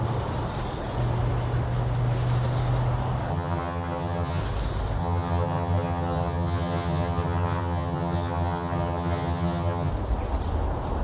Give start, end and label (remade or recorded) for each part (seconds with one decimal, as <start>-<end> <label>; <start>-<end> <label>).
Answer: 0.0-3.3 recorded; 3.3-4.4 remade; 4.4-5.0 recorded; 5.0-9.9 remade; 9.9-11.0 recorded